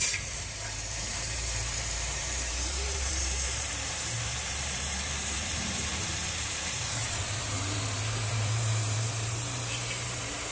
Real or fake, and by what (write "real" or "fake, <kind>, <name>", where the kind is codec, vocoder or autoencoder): fake, vocoder, BigVGAN v2